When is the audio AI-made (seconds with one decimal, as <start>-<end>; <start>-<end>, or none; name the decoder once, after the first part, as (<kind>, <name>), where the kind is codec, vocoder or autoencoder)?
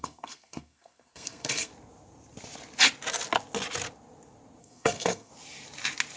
0.0-1.7 (codec, SNAC); 4.6-5.3